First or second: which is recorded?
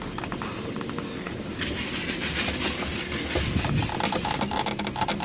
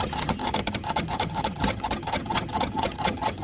first